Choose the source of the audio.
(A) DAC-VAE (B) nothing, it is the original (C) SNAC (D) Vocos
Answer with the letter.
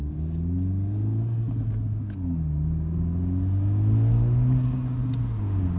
B